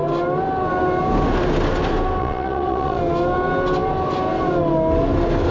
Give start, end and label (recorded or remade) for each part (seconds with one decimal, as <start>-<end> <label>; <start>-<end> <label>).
0.0-2.2 recorded; 2.2-3.0 remade; 3.0-5.5 recorded